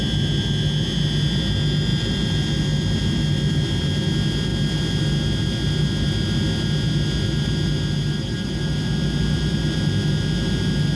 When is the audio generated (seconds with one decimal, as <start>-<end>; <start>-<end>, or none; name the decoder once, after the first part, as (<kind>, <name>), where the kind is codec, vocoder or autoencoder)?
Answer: none